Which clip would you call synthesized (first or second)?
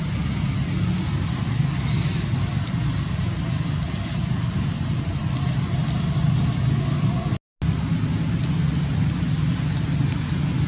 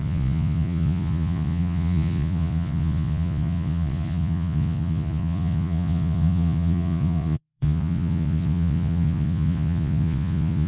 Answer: second